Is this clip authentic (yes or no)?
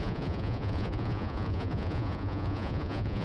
no